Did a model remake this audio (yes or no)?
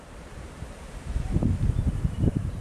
yes